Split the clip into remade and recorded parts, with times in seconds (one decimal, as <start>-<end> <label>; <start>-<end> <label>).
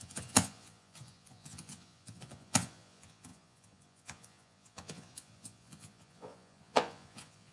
0.0-7.5 remade